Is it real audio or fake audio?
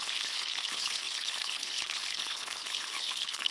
fake